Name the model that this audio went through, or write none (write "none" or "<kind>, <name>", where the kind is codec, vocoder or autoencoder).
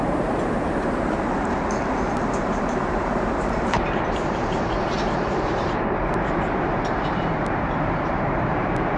vocoder, BigVGAN v2